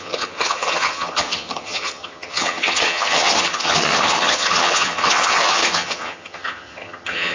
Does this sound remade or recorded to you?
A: remade